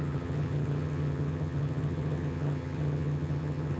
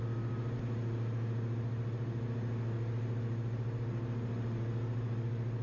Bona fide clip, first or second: second